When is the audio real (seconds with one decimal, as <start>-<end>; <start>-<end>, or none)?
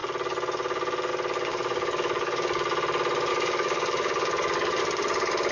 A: 0.0-1.5; 2.6-3.3; 4.8-5.5